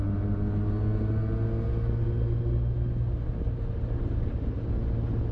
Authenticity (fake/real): real